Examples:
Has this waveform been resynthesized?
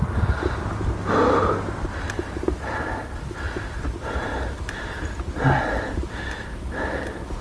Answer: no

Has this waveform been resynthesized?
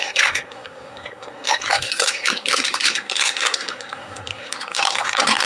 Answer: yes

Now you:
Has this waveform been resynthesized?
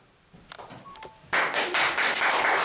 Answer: no